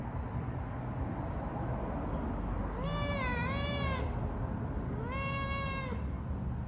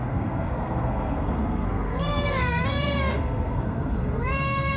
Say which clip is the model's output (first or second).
second